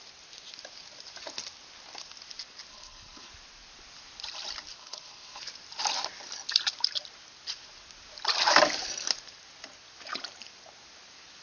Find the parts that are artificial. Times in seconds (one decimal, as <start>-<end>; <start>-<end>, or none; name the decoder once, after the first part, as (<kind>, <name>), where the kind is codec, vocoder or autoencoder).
2.7-3.3 (codec, HILCodec); 4.8-5.4